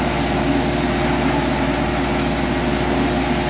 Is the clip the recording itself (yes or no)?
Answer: yes